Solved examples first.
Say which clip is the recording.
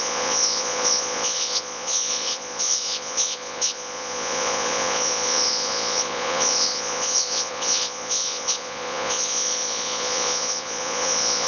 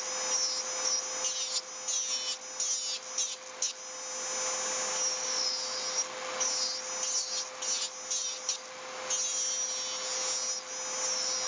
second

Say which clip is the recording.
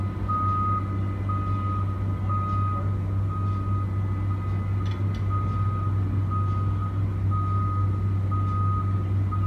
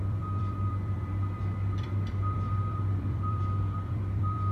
first